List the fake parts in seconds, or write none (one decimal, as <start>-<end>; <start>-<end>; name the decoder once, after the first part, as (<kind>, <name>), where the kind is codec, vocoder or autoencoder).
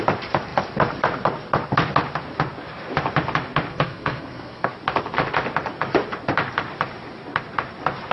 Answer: 3.7-4.7 (codec, SNAC)